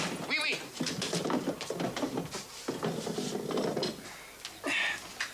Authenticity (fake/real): real